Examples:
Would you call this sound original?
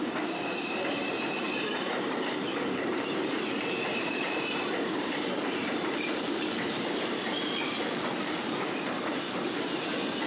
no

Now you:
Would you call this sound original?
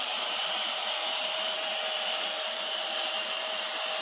no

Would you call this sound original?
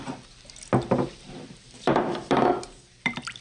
no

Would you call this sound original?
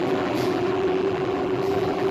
no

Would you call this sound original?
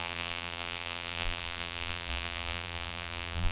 no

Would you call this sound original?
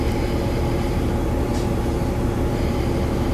no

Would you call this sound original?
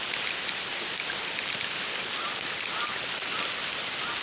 yes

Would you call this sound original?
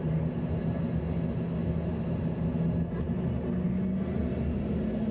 yes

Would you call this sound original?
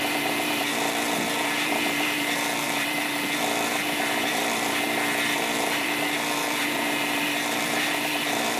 no